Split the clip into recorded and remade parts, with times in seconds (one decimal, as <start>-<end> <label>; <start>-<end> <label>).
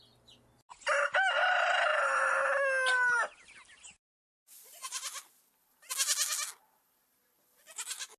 0.0-8.2 recorded